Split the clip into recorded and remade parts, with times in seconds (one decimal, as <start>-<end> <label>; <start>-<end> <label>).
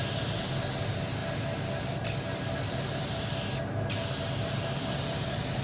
0.0-5.6 recorded